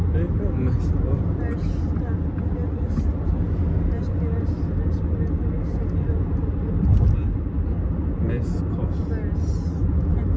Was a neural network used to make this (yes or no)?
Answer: no